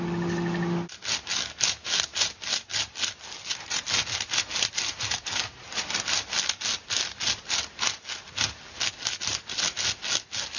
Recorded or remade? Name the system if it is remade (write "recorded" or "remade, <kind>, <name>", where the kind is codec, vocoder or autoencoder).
recorded